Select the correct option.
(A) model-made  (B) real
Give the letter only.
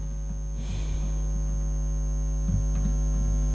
B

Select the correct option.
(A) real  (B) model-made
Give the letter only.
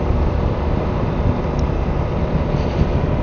A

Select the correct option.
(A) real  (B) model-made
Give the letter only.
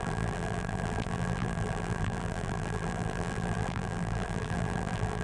B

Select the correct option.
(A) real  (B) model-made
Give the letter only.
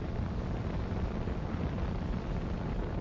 A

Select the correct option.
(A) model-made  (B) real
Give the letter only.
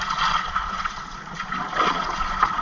A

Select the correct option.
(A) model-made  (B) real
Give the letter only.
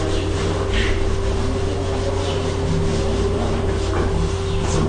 B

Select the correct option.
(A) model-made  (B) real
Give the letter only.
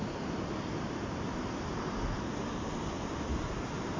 B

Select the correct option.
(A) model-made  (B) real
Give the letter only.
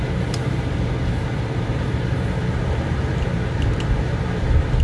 A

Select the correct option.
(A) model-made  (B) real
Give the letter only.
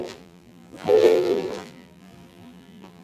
A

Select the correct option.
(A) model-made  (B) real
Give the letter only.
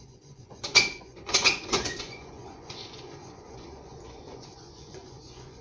A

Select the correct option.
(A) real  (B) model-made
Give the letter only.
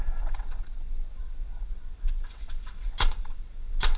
B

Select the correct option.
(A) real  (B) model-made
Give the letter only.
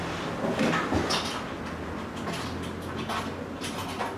A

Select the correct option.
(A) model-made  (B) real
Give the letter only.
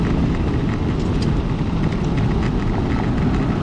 B